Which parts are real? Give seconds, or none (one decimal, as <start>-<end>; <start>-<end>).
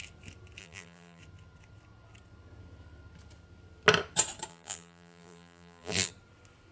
0.0-0.6; 1.2-4.5; 6.1-6.7